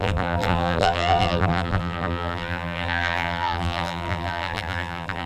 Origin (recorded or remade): remade